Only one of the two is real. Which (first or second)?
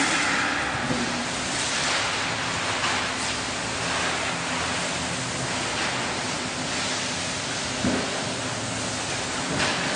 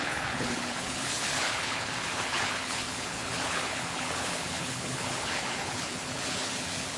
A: first